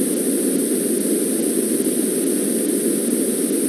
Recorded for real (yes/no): yes